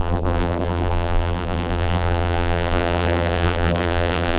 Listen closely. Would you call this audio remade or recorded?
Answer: remade